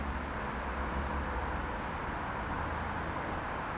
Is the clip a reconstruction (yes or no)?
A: no